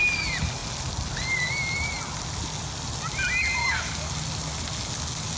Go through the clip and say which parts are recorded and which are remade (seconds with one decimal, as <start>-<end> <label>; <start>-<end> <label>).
0.0-3.6 recorded; 3.6-4.1 remade; 4.1-5.4 recorded